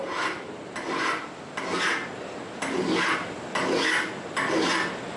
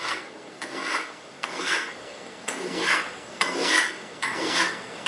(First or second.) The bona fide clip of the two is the first